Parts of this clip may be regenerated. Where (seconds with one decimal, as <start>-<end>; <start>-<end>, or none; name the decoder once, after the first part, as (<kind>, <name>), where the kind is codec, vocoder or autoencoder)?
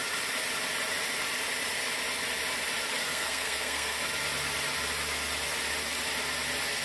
3.0-4.0 (codec, SNAC)